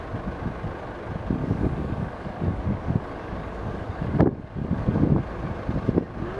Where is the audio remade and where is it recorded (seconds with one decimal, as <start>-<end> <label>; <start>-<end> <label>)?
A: 0.0-1.4 recorded; 1.4-5.2 remade; 5.2-6.4 recorded